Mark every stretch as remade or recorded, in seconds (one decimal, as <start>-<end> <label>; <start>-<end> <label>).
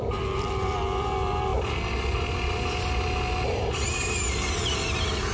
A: 0.0-5.3 recorded